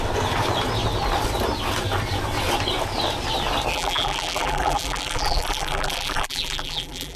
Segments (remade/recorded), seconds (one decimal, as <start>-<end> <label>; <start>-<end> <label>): 0.0-3.7 recorded; 3.7-7.2 remade